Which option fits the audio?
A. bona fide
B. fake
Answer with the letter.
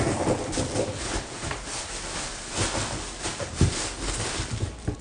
A